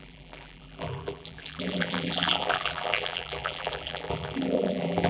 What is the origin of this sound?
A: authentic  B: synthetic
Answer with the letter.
B